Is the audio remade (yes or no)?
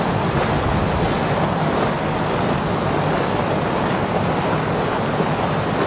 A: no